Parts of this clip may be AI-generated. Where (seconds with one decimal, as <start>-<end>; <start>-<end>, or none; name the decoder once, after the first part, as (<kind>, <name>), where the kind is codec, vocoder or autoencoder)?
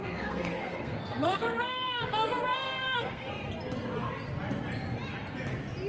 0.0-3.5 (codec, SNAC)